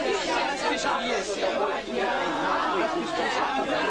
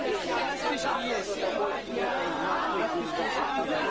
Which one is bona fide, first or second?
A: second